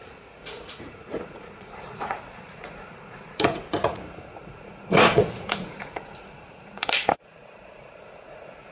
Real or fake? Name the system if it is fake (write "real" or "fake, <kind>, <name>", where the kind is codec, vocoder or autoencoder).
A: fake, vocoder, Vocos